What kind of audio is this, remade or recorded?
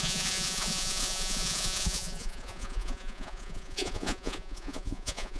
remade